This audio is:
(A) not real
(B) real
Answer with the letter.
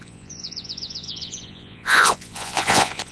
A